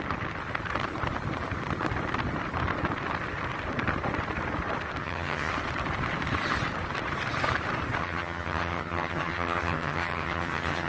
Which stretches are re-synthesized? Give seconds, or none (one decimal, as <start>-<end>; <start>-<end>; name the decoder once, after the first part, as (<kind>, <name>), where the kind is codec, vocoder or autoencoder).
5.0-5.5 (vocoder, HiFi-GAN); 8.0-10.9